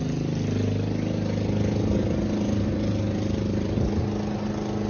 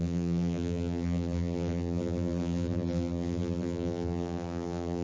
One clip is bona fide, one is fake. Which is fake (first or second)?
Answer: second